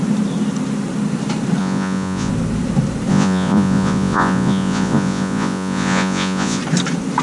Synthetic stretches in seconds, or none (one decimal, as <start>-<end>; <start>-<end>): 1.6-2.3; 3.1-6.6